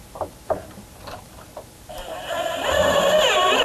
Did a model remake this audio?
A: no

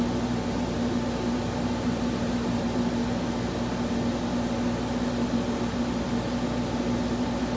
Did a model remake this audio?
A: no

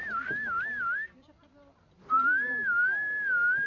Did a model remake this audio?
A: no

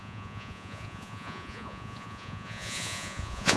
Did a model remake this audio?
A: yes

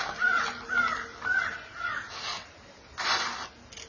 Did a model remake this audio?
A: no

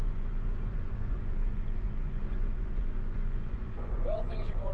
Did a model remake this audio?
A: yes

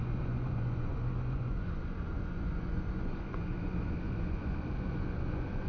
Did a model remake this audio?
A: yes